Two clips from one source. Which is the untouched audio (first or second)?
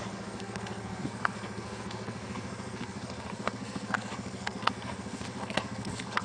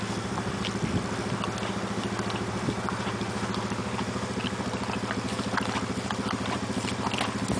second